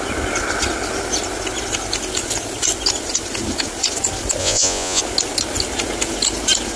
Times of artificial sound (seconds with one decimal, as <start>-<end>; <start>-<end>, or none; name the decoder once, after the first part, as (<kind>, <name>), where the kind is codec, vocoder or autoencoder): 4.4-5.0 (vocoder, Vocos)